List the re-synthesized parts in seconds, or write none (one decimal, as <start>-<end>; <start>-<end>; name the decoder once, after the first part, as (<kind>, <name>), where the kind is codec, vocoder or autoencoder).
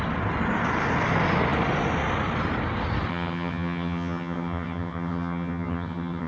3.1-6.3 (vocoder, HiFi-GAN)